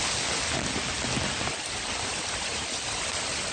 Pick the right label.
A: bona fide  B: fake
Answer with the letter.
A